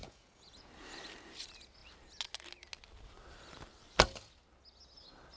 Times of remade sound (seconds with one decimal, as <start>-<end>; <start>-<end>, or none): 0.0-0.7